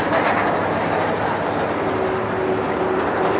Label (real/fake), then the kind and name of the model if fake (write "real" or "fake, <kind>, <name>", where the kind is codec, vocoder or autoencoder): real